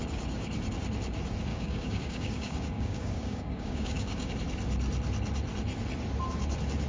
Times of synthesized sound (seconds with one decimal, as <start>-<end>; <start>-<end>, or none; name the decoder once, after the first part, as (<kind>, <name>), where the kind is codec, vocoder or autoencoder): 1.5-4.3 (codec, DAC)